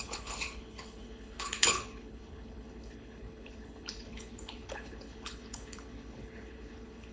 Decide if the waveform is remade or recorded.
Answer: remade